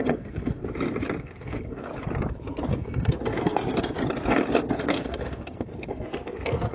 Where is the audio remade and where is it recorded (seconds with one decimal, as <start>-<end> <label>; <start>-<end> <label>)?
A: 0.0-0.6 remade; 0.6-1.2 recorded; 1.2-1.9 remade; 1.9-2.7 recorded; 2.7-3.6 remade; 3.6-4.8 recorded; 4.8-6.7 remade